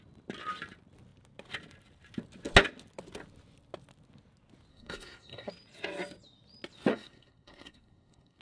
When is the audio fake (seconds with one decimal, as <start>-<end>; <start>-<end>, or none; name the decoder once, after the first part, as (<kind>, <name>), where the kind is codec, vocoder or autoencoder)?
4.7-5.5 (codec, SNAC); 6.9-8.4